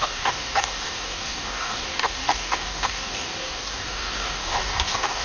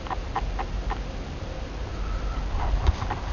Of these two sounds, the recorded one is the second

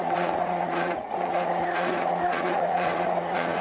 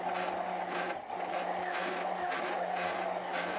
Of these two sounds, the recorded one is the second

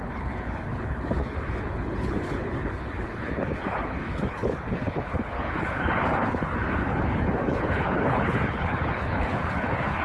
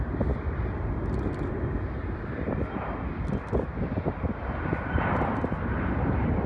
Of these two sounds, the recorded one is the second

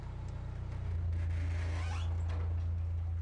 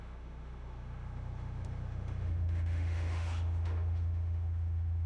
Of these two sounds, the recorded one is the first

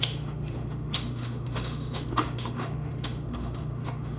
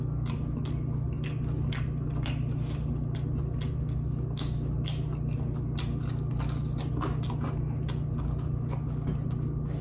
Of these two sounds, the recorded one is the second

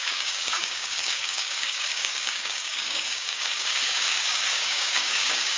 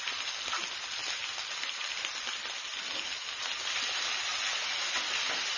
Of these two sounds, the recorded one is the second